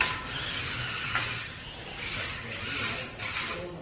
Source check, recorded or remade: recorded